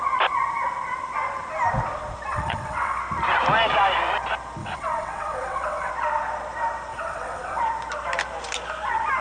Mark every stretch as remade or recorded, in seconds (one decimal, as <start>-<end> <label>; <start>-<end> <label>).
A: 0.0-2.3 recorded; 2.3-3.0 remade; 3.0-4.6 recorded; 4.6-5.9 remade; 5.9-6.9 recorded; 6.9-7.6 remade; 7.6-9.2 recorded